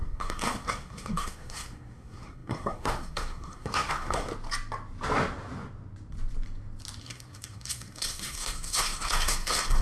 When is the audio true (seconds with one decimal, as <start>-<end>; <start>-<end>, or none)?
4.3-7.0